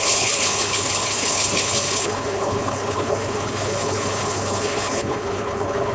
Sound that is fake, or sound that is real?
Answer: fake